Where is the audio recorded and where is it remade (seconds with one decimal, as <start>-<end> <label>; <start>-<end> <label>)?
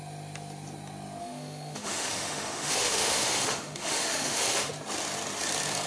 0.0-1.2 recorded; 1.2-4.7 remade; 4.7-5.9 recorded